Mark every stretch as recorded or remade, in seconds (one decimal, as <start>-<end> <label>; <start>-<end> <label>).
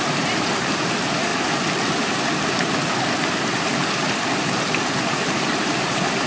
0.0-1.3 remade; 1.3-5.1 recorded; 5.1-6.3 remade